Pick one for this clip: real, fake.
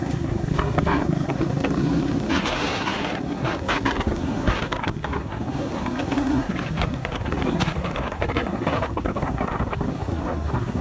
fake